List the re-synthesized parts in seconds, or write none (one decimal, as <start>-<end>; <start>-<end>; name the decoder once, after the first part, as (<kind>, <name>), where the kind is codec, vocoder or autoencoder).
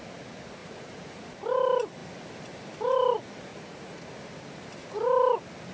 0.6-1.3 (vocoder, Vocos); 3.5-4.1